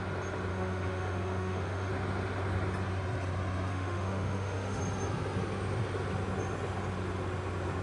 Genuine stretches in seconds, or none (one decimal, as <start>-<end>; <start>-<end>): 0.0-0.5; 1.9-3.7; 4.8-7.8